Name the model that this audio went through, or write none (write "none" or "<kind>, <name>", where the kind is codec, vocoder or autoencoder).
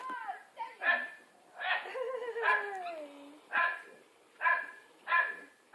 none